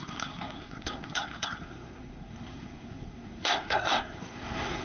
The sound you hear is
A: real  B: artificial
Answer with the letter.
B